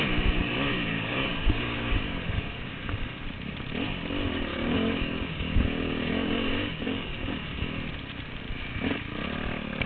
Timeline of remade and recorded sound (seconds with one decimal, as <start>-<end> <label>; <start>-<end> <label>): 0.0-0.7 recorded; 0.7-3.2 remade; 3.2-4.5 recorded; 4.5-7.7 remade; 7.7-9.9 recorded